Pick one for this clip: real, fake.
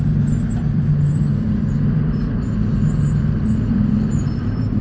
fake